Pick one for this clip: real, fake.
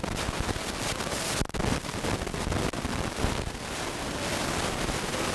real